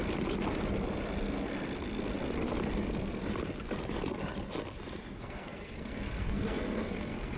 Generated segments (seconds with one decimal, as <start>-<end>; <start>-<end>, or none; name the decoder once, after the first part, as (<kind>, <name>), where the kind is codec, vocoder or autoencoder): 5.2-7.4 (codec, SNAC)